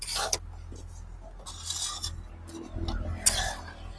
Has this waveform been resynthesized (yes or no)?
no